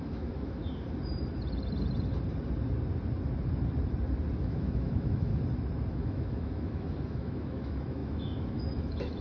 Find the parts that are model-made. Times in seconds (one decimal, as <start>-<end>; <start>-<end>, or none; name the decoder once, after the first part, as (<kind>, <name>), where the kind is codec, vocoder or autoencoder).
0.0-0.6 (autoencoder, DAC-VAE); 4.4-5.3; 5.9-9.2